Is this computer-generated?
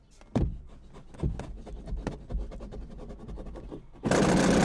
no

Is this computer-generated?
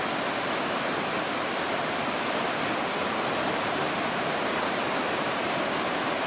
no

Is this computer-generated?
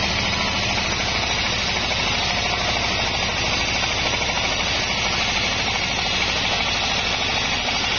no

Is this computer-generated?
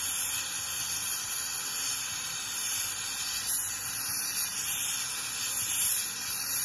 no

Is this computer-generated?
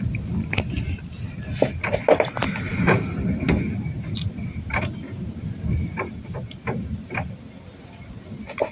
no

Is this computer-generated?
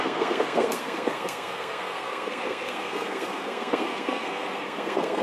yes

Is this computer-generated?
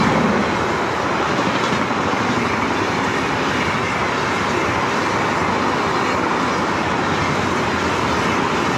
no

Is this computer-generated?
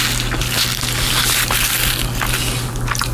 no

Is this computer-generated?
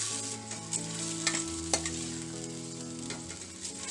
no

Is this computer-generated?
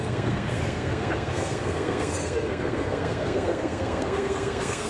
yes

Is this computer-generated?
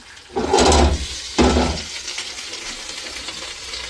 no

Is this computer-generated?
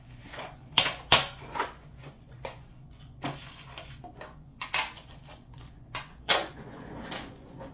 yes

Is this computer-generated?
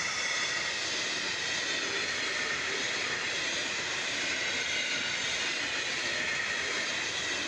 no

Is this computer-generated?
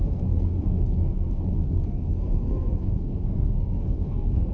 yes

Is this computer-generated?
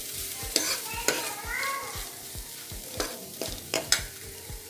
yes